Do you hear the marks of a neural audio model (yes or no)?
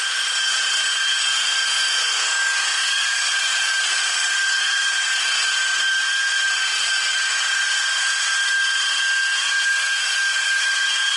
no